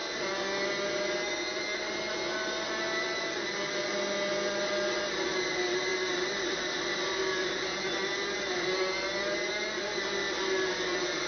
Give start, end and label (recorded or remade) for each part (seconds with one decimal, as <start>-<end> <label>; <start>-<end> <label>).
0.0-11.3 recorded